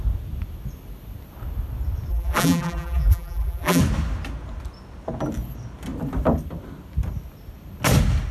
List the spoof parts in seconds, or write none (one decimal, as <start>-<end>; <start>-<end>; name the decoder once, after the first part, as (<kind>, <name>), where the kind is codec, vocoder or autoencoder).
2.1-3.8 (vocoder, BigVGAN v2)